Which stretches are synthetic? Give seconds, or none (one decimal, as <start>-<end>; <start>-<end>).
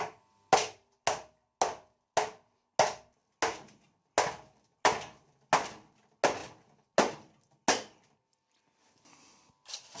none